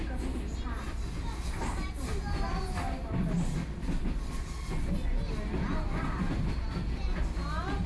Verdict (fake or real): real